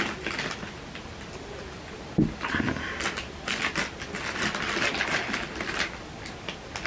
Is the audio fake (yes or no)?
no